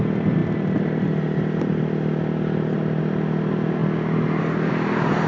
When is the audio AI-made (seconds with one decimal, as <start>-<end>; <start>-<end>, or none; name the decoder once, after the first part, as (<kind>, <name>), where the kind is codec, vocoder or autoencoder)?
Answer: none